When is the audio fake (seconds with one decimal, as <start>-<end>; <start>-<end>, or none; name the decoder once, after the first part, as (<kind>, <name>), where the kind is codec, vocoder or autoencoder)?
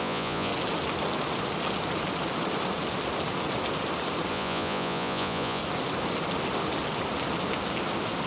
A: 0.0-0.5 (vocoder, Vocos); 4.3-5.6